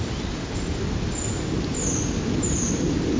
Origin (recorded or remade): recorded